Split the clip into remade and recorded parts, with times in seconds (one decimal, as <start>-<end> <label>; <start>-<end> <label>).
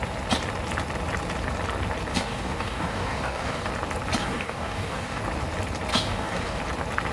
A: 0.0-2.1 recorded; 2.1-3.7 remade; 3.7-4.2 recorded; 4.2-5.2 remade; 5.2-5.9 recorded; 5.9-6.6 remade; 6.6-7.1 recorded